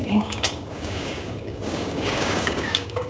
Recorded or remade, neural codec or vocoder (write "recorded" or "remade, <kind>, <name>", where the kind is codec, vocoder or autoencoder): remade, codec, DAC